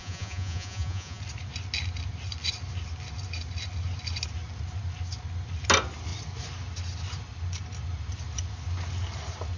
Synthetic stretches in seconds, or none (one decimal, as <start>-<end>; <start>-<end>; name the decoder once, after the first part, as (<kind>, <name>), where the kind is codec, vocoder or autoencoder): 0.0-1.2 (vocoder, Vocos)